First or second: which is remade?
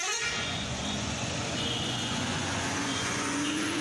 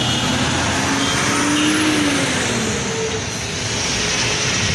first